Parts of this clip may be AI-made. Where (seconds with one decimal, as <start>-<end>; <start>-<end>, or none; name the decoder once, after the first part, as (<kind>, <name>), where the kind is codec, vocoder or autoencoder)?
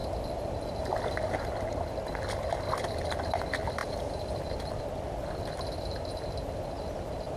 none